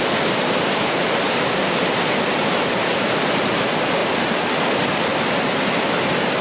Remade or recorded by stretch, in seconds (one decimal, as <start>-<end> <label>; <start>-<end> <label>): 0.0-6.4 recorded

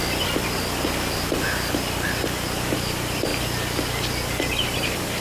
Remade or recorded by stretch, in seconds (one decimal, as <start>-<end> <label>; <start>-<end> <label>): 0.0-5.2 recorded

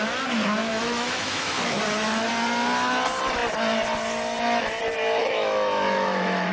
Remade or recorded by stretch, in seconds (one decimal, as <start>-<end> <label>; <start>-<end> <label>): 0.0-0.7 recorded; 0.7-2.3 remade; 2.3-5.2 recorded; 5.2-6.5 remade

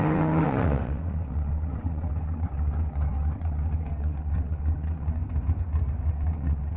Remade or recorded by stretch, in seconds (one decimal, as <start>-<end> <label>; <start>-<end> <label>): 0.0-5.2 remade; 5.2-6.1 recorded; 6.1-6.8 remade

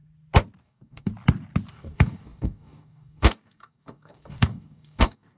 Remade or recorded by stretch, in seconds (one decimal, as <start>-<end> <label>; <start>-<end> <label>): 0.0-0.6 recorded; 0.6-1.1 remade; 1.1-1.7 recorded; 1.7-5.4 remade

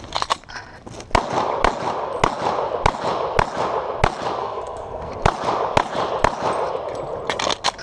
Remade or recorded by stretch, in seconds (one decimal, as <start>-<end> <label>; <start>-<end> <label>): 0.0-4.4 recorded; 4.4-5.1 remade; 5.1-7.8 recorded

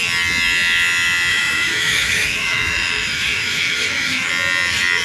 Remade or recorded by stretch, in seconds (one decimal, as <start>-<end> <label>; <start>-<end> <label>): 0.0-1.3 recorded; 1.3-4.3 remade; 4.3-5.0 recorded

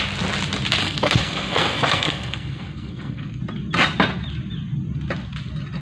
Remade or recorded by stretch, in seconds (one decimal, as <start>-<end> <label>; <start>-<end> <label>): 0.0-0.8 recorded; 0.8-3.4 remade; 3.4-5.8 recorded